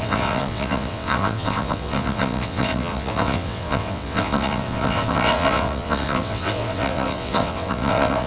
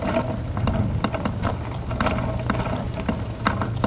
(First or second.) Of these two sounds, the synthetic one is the first